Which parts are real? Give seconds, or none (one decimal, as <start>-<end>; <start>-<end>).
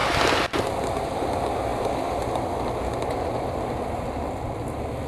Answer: 0.0-5.1